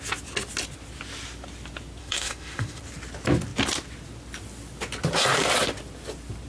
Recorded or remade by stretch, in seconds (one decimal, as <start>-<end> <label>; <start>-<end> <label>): 0.0-2.0 recorded; 2.0-2.8 remade; 2.8-6.5 recorded